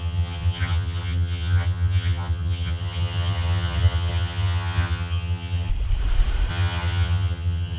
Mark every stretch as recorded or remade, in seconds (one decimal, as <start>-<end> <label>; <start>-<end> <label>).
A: 0.0-5.7 remade; 5.7-6.5 recorded; 6.5-7.8 remade